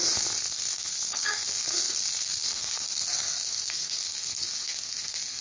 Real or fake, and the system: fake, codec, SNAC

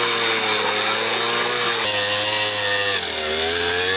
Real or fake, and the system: real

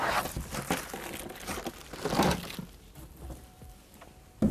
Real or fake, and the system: real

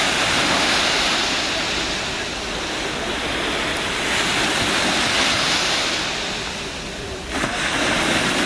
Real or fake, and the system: real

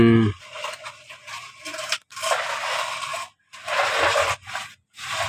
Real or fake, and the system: real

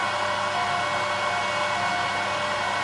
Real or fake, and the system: real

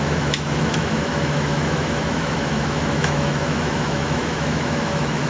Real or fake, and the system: fake, autoencoder, DAC-VAE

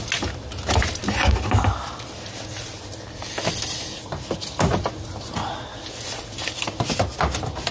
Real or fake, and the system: real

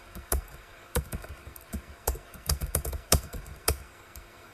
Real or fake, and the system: fake, codec, SNAC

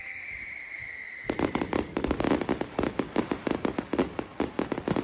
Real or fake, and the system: real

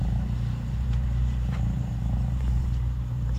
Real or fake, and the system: fake, vocoder, BigVGAN v2